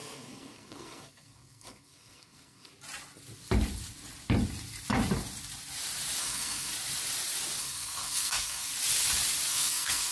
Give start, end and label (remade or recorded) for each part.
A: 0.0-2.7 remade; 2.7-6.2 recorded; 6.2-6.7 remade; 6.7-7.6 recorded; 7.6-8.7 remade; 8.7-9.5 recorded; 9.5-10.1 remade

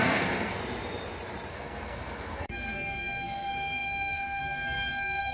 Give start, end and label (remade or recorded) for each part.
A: 0.0-0.6 remade; 0.6-1.5 recorded; 1.5-5.3 remade

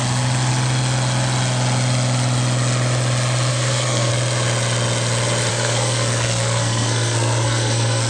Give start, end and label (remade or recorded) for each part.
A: 0.0-3.5 recorded; 3.5-4.1 remade; 4.1-5.5 recorded; 5.5-8.1 remade

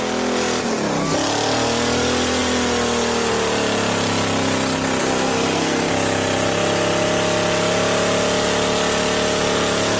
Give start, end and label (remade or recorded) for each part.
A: 0.0-5.0 recorded; 5.0-5.9 remade; 5.9-10.0 recorded

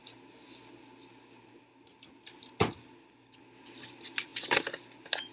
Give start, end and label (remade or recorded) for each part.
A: 0.0-5.3 recorded

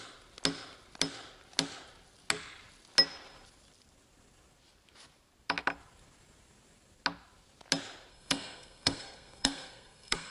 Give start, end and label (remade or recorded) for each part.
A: 0.0-8.1 recorded; 8.1-10.3 remade

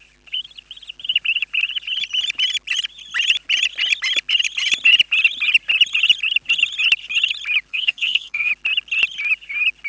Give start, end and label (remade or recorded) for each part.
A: 0.0-7.7 recorded; 7.7-8.5 remade; 8.5-9.9 recorded